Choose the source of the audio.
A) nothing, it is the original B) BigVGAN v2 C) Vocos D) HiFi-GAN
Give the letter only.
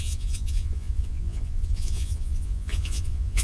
C